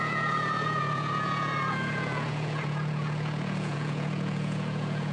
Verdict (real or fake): fake